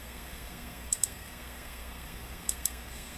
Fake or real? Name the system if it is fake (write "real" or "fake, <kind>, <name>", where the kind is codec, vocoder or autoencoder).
fake, codec, SNAC